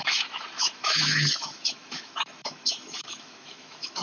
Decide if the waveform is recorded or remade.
remade